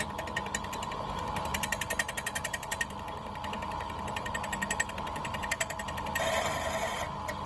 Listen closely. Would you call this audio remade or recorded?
recorded